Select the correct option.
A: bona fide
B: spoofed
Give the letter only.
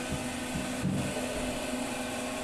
A